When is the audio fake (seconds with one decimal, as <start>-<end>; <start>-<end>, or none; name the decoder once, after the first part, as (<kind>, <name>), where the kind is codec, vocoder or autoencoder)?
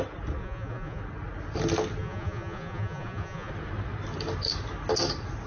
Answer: 0.4-1.0 (vocoder, Vocos); 2.0-3.5